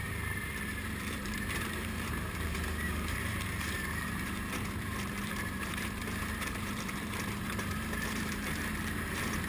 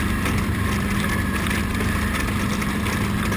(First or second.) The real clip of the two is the second